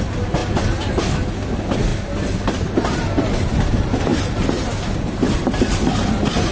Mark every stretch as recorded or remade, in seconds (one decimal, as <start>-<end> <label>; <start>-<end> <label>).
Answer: 0.0-6.5 recorded